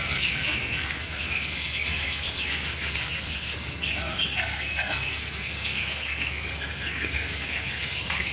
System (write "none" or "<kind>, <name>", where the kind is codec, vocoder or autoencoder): codec, SNAC